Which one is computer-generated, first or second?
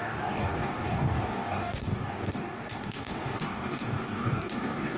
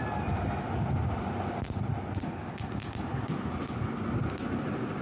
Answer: first